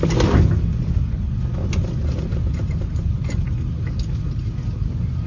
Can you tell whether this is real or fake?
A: real